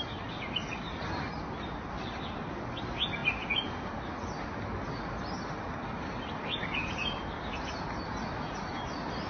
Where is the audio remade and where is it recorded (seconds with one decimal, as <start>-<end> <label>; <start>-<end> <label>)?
0.0-9.3 recorded